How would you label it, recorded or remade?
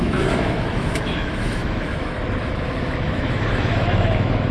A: remade